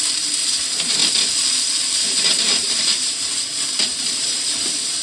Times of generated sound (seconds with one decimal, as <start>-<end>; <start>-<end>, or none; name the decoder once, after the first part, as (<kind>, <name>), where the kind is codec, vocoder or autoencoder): 0.0-1.0 (vocoder, BigVGAN v2); 1.8-5.0